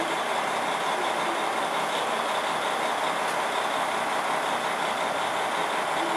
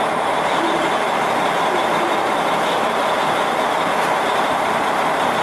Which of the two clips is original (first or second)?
first